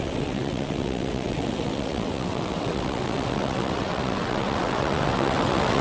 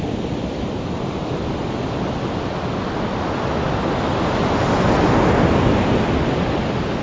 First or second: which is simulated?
first